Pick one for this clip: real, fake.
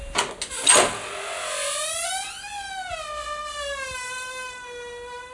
real